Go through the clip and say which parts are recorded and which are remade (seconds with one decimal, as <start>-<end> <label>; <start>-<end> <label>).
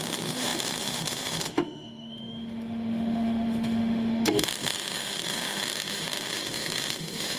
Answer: 0.0-7.4 remade